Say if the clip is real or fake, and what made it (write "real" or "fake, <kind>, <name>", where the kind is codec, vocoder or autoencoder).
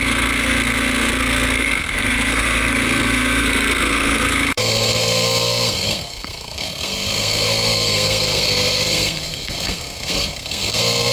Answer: fake, codec, SNAC